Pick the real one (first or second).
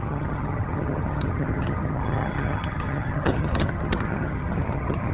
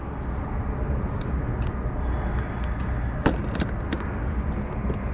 second